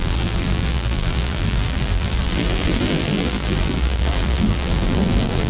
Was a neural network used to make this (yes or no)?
yes